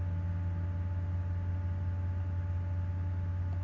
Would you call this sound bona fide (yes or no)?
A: yes